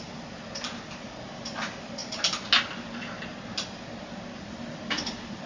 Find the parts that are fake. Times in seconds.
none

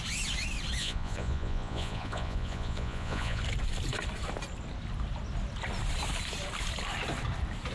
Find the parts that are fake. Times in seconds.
0.8-3.4

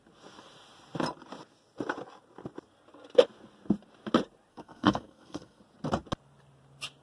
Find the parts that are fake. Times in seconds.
4.5-5.6

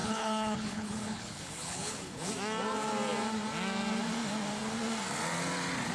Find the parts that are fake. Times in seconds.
0.0-2.3

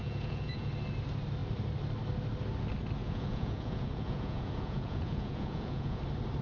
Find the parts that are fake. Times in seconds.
0.0-0.7; 3.0-6.0

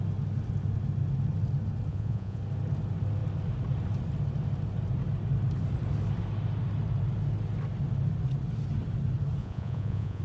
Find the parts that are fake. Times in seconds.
1.9-2.4; 9.4-10.2